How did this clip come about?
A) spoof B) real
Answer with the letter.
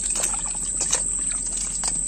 B